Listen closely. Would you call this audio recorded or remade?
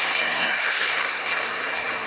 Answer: remade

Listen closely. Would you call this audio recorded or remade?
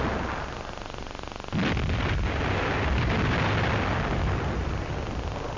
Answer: recorded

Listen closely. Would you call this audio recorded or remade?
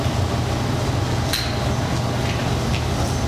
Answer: recorded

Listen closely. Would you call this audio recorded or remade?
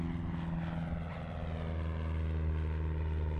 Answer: recorded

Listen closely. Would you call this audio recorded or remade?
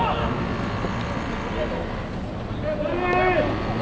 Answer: recorded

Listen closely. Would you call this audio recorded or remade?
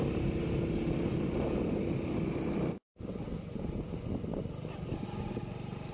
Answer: recorded